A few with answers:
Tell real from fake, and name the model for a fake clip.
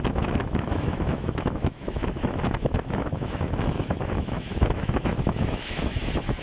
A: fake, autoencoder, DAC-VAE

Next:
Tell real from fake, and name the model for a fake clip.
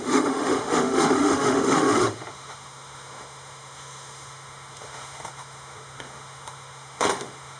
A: fake, autoencoder, DAC-VAE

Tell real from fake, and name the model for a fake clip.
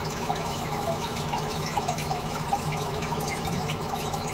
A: fake, autoencoder, DAC-VAE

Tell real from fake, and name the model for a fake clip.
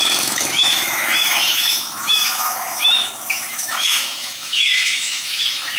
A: fake, autoencoder, DAC-VAE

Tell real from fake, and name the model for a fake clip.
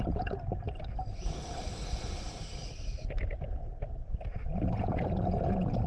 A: real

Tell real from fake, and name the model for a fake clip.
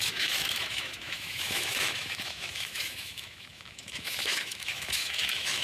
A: fake, autoencoder, DAC-VAE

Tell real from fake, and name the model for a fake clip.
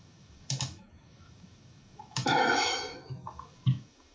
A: fake, autoencoder, DAC-VAE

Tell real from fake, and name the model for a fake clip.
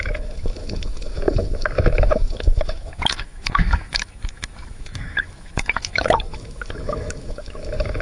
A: fake, autoencoder, DAC-VAE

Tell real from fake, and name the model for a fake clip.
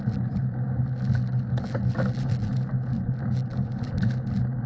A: real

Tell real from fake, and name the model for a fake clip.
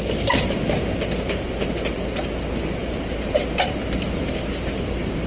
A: real